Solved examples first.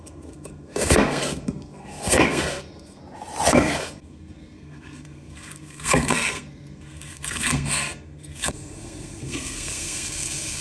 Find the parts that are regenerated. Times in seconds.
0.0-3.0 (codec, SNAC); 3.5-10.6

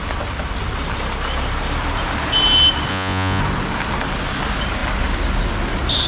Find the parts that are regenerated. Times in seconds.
2.9-3.4 (vocoder, Vocos)

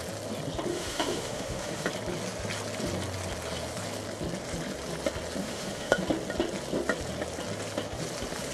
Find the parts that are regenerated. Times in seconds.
0.7-1.9 (autoencoder, DAC-VAE); 5.4-6.0

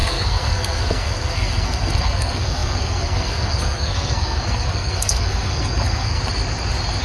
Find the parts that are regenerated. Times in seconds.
0.0-6.2 (codec, SNAC)

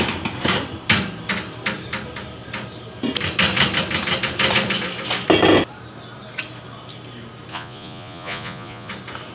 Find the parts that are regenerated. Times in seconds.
7.5-8.9 (vocoder, Vocos)